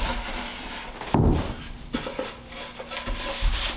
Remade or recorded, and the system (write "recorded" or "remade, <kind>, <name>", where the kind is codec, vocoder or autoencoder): recorded